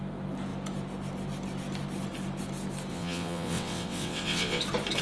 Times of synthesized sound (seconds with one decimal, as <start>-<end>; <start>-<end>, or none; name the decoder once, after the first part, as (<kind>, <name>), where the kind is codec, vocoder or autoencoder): 2.9-4.6 (vocoder, WaveNeXt)